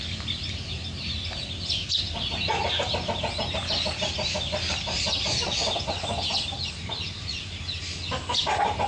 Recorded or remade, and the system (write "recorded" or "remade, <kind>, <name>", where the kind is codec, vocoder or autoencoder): recorded